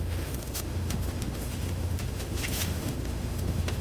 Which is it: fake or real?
fake